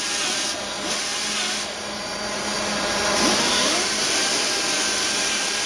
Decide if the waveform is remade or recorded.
recorded